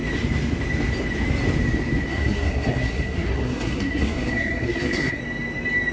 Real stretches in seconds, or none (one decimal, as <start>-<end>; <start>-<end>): 0.0-2.1; 5.2-5.9